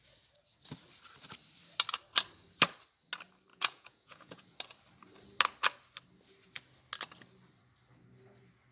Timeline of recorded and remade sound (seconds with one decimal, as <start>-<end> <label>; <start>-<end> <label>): 0.0-3.5 recorded; 3.5-4.4 remade; 4.4-8.7 recorded